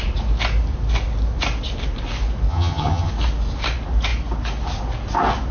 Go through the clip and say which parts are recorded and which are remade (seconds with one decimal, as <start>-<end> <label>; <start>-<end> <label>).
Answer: 0.0-2.5 recorded; 2.5-3.1 remade; 3.1-5.5 recorded